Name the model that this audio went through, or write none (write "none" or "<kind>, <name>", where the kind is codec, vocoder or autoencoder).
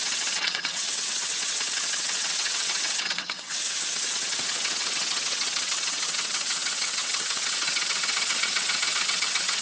vocoder, WaveNeXt